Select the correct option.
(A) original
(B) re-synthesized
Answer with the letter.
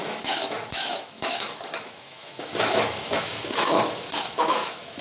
B